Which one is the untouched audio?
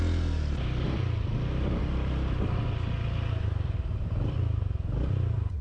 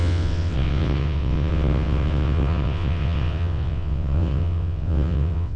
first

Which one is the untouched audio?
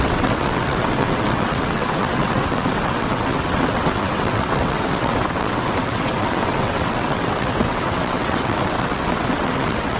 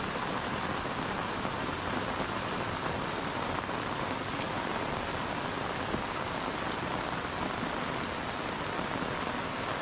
second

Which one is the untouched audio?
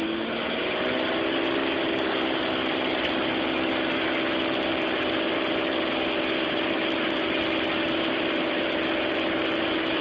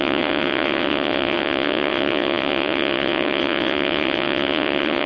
first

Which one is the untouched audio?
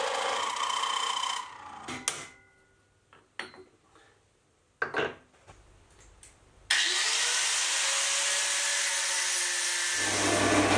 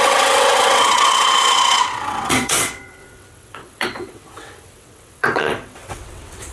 first